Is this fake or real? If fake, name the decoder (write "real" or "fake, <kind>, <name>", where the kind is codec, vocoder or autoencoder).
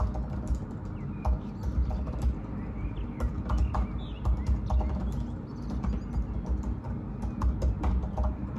real